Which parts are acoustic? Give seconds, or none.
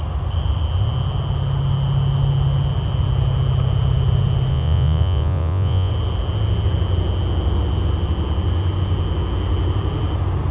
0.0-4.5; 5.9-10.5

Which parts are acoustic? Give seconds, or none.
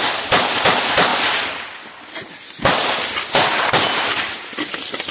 0.0-5.1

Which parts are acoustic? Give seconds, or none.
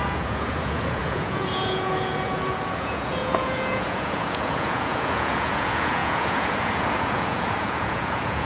none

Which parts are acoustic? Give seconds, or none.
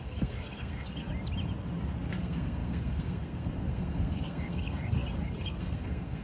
1.1-2.2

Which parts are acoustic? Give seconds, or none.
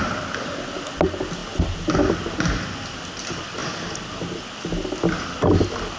0.0-6.0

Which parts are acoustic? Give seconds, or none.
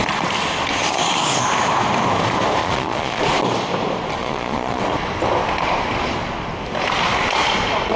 0.0-2.6; 3.2-4.2; 4.8-8.0